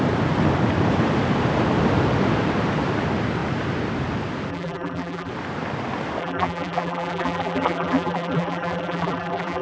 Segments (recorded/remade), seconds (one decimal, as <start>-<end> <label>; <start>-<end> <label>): 0.0-4.5 recorded; 4.5-5.3 remade; 5.3-6.2 recorded; 6.2-9.6 remade